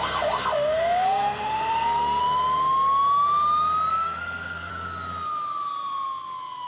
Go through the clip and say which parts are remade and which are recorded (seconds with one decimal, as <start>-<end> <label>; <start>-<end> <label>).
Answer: 0.0-2.2 remade; 2.2-3.9 recorded; 3.9-4.7 remade; 4.7-6.7 recorded